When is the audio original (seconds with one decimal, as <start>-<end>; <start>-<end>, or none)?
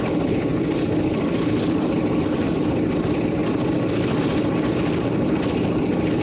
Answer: 3.4-4.2